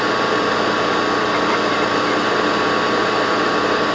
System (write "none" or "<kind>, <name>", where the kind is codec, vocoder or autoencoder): none